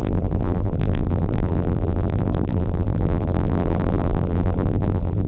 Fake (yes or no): yes